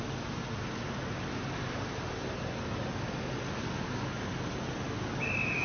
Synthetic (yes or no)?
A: no